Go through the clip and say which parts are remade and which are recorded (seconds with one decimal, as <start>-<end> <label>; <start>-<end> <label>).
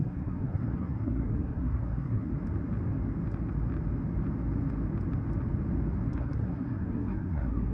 0.0-2.3 remade; 2.3-6.1 recorded; 6.1-7.7 remade